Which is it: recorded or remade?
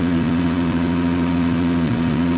remade